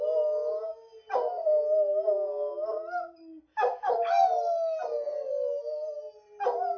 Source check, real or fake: real